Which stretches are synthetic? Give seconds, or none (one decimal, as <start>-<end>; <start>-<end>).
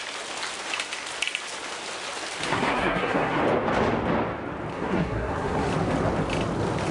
2.5-3.4; 4.7-5.7